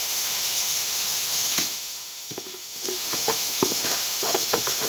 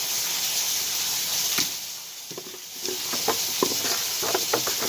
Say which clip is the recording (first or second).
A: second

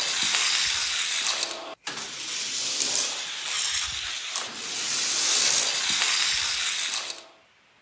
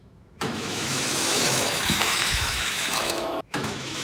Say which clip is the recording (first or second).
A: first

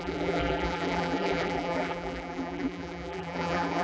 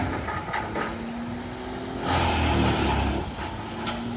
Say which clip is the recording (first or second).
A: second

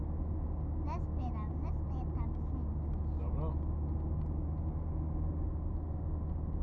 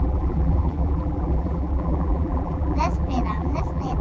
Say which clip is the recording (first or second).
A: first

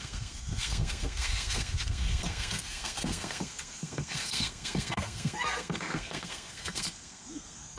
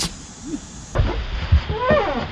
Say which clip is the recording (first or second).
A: second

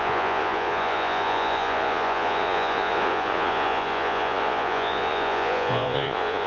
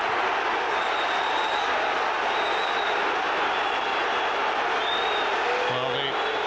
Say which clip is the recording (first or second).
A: second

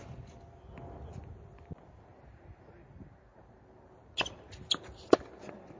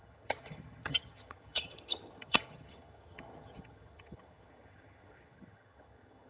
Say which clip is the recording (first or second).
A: first